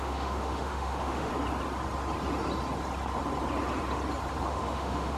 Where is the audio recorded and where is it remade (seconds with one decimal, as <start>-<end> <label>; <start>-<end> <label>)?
0.0-1.3 remade; 1.3-4.4 recorded; 4.4-5.2 remade